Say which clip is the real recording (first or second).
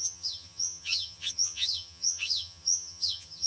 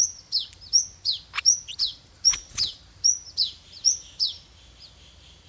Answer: second